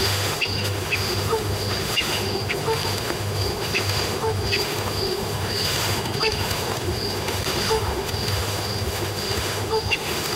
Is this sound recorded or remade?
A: remade